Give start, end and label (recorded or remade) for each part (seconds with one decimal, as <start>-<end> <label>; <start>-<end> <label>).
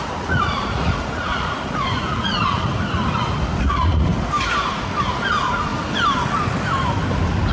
0.0-2.7 remade; 2.7-3.6 recorded; 3.6-4.1 remade; 4.1-5.3 recorded; 5.3-5.7 remade; 5.7-7.5 recorded